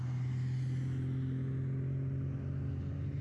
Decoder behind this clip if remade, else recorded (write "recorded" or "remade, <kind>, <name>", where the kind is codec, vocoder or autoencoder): recorded